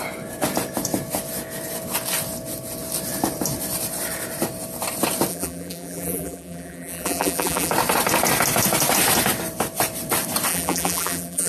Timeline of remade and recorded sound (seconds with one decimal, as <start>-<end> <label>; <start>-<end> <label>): 0.0-5.3 recorded; 5.3-7.7 remade; 7.7-10.5 recorded; 10.5-11.5 remade